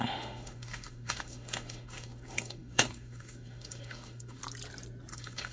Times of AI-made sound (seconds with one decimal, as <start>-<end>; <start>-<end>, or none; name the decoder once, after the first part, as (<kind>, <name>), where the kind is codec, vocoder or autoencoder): 0.0-4.4 (autoencoder, DAC-VAE); 5.1-5.5